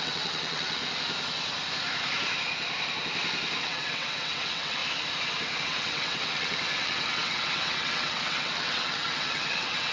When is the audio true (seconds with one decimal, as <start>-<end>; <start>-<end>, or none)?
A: 0.8-3.6; 4.8-5.6